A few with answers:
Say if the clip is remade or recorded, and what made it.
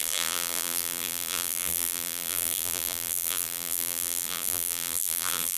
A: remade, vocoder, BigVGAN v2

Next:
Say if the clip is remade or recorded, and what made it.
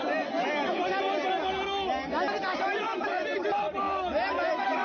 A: recorded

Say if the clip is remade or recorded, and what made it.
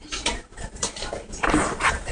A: recorded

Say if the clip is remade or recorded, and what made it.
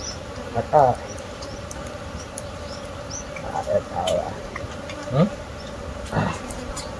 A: recorded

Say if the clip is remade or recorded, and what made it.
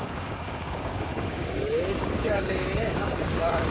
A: remade, codec, DAC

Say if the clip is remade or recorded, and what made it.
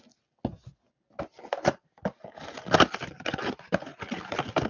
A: recorded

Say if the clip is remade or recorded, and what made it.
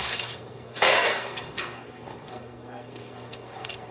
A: remade, codec, SNAC